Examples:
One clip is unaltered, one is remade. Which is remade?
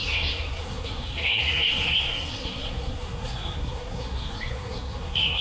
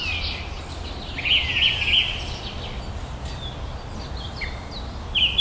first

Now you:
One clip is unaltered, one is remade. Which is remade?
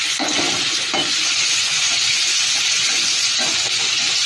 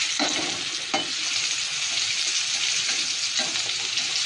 first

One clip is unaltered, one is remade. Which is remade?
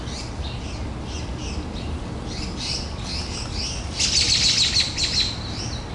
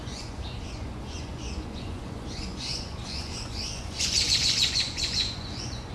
second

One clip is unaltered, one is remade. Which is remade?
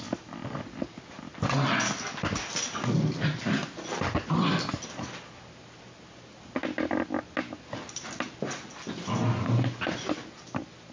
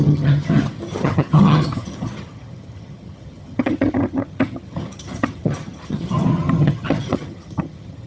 second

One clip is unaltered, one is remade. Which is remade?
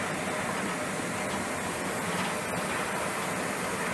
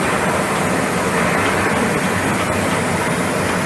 first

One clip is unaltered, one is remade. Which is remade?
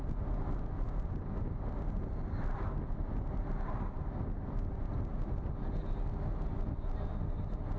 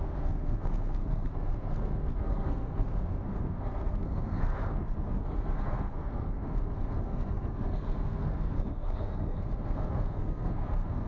second